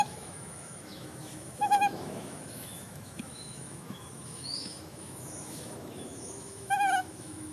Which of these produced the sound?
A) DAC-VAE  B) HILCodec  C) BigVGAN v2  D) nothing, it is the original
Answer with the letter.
A